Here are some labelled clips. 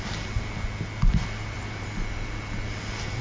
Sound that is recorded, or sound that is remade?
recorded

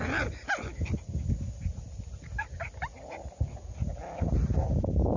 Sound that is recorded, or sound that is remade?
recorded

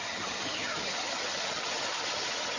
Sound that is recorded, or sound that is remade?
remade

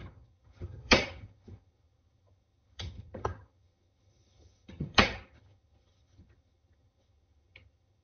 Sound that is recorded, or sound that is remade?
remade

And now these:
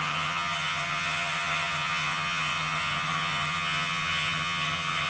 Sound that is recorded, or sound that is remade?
remade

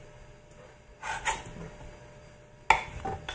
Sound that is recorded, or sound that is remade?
recorded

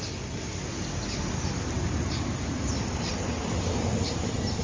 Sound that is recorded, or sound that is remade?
recorded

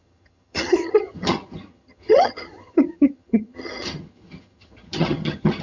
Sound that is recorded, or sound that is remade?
remade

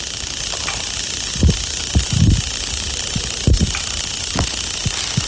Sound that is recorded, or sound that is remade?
recorded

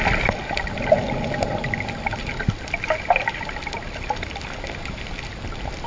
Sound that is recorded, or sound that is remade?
recorded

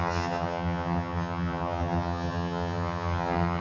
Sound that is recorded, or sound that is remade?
remade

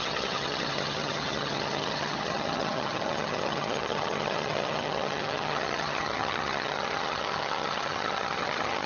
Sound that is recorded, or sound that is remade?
remade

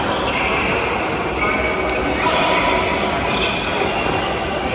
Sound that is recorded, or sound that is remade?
recorded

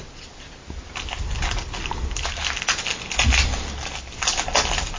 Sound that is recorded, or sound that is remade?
recorded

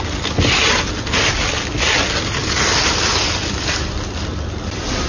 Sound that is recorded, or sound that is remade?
recorded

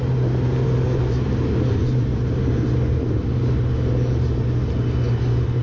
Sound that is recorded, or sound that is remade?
recorded